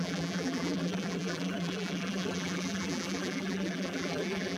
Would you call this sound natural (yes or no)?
no